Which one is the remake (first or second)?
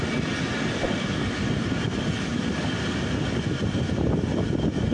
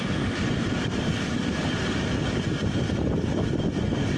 second